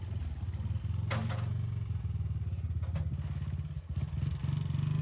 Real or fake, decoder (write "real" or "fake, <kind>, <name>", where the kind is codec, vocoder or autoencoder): real